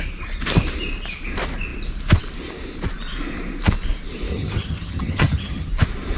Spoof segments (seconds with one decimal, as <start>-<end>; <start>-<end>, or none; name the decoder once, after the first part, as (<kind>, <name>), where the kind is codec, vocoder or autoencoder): 4.3-5.7 (vocoder, HiFi-GAN)